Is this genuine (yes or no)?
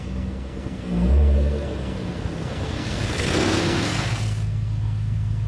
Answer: no